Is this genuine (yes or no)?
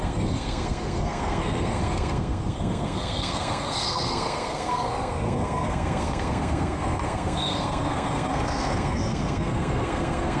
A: no